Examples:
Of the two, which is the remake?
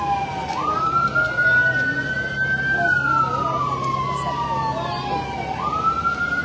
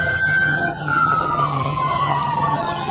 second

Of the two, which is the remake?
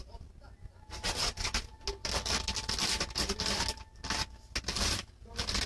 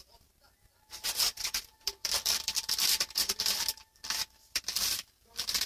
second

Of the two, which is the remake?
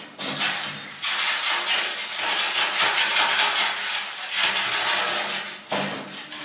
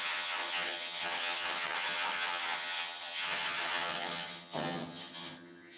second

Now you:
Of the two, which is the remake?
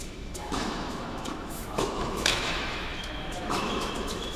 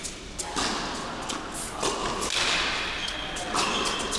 first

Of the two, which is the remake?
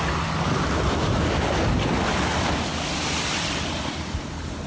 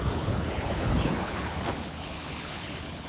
second